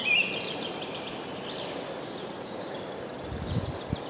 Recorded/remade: recorded